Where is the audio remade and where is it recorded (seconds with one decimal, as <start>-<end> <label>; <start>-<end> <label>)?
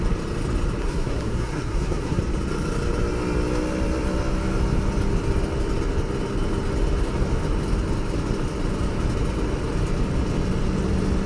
0.0-0.8 recorded; 0.8-2.2 remade; 2.2-11.3 recorded